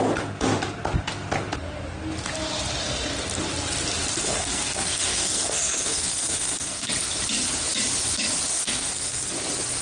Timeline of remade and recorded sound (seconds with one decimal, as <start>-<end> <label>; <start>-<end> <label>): 0.0-4.2 recorded; 4.2-6.9 remade; 6.9-8.5 recorded; 8.5-9.3 remade; 9.3-9.8 recorded